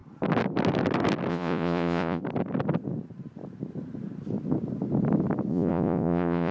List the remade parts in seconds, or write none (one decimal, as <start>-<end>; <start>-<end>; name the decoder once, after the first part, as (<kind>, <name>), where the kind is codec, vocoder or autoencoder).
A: 1.3-2.2 (vocoder, Vocos); 5.5-6.5